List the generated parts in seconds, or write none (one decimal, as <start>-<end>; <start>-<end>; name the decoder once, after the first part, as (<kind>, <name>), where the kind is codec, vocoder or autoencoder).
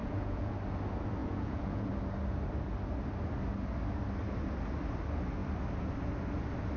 0.0-0.5 (vocoder, Vocos); 1.2-1.9